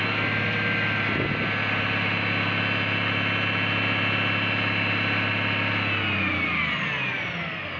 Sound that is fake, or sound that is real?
real